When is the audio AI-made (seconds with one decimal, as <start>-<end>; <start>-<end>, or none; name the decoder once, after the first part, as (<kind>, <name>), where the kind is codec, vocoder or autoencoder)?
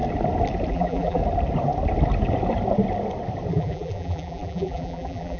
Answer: 0.7-1.2 (vocoder, BigVGAN v2); 3.5-5.4